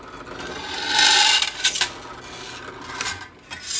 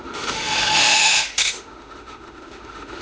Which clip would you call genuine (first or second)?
first